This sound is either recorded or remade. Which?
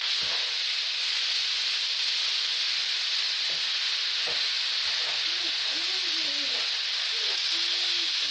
recorded